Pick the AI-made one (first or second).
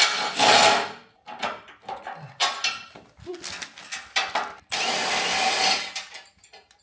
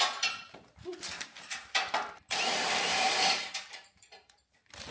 second